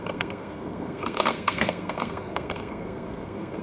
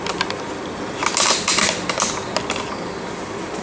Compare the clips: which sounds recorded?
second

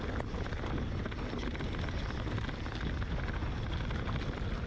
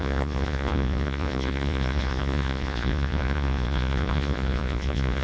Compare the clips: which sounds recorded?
first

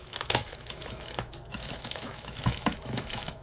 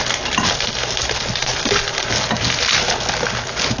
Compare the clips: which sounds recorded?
second